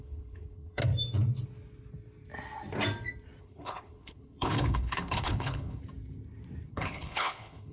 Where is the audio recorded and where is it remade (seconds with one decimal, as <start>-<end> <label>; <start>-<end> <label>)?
0.0-0.8 remade; 0.8-3.4 recorded; 3.4-5.8 remade; 5.8-6.7 recorded; 6.7-7.7 remade